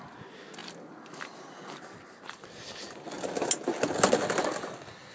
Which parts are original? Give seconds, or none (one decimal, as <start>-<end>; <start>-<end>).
0.0-5.1

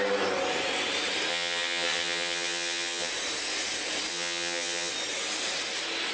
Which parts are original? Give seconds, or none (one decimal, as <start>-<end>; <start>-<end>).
0.0-1.3; 3.1-4.1; 4.9-6.1

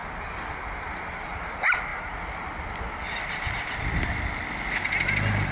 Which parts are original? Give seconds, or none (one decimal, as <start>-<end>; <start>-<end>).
0.0-5.5

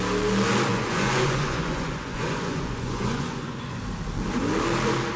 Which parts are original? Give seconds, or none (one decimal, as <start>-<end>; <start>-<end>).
0.0-0.7; 3.8-5.2